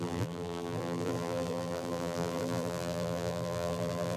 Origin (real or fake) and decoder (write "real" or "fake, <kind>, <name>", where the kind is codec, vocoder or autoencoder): fake, vocoder, BigVGAN v2